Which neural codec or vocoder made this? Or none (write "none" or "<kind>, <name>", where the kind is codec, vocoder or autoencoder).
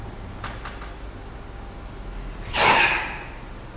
none